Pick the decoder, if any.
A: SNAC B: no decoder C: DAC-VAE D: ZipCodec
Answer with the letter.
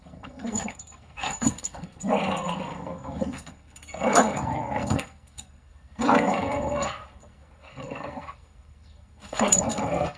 A